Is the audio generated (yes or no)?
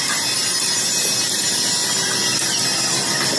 no